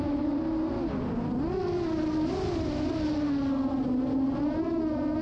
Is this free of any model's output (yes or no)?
yes